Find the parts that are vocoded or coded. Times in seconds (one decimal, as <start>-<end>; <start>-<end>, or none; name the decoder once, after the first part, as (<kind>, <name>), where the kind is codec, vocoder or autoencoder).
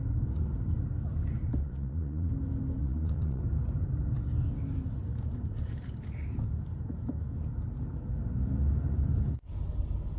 1.6-2.3 (vocoder, Vocos); 2.8-3.4